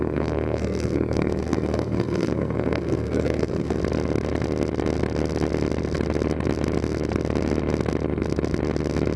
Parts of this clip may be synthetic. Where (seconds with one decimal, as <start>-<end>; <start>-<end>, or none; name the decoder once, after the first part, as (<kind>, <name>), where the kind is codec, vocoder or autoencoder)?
0.0-3.8 (codec, SNAC)